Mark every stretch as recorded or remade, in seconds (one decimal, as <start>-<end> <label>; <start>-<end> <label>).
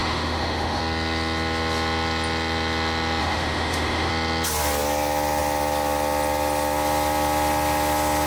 0.0-0.8 remade; 0.8-3.2 recorded; 3.2-4.1 remade; 4.1-8.3 recorded